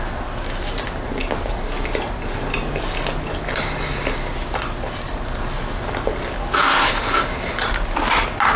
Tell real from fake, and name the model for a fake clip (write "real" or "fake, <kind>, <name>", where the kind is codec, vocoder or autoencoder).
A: real